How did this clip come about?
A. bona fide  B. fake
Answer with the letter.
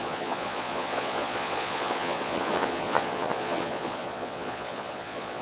B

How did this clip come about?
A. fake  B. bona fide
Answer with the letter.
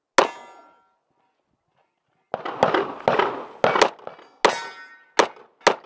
B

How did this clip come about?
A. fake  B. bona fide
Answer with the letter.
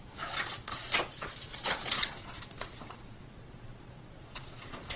A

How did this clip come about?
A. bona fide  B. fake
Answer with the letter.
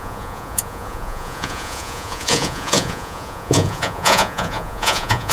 B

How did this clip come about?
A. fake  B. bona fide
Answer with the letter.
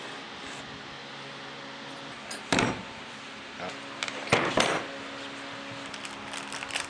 B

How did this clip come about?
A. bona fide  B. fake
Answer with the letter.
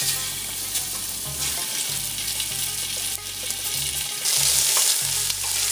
A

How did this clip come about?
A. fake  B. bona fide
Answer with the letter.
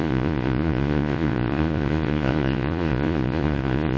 A